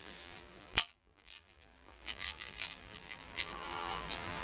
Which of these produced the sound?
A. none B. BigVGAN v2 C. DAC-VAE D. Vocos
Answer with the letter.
B